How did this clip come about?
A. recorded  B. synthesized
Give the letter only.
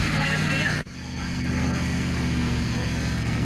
B